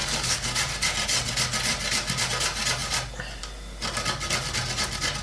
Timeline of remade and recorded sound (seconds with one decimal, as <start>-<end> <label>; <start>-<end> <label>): 0.0-0.6 remade; 0.6-5.2 recorded